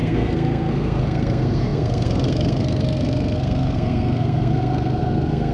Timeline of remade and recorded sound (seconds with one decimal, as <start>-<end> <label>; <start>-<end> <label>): 0.0-5.5 remade